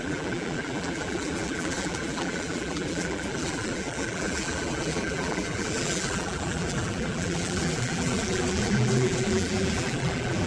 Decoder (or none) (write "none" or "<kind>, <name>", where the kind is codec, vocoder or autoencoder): vocoder, BigVGAN v2